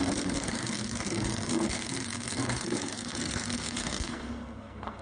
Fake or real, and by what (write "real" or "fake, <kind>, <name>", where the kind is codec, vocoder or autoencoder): fake, codec, SNAC